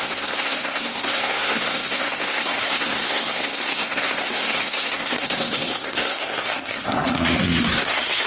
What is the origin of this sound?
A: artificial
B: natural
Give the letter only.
A